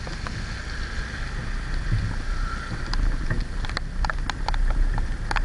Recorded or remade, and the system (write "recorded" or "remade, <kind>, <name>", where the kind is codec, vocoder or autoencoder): recorded